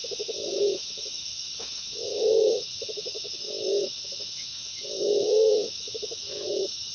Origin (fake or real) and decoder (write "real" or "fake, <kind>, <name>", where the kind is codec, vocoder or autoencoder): fake, autoencoder, DAC-VAE